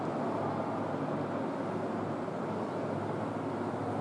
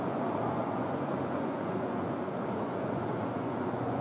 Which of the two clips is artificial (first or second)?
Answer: second